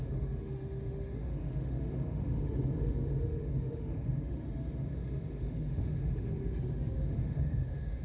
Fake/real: fake